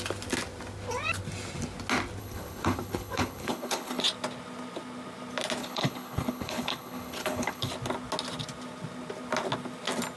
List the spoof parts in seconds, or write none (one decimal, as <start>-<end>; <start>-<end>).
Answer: 2.2-4.0; 5.6-7.7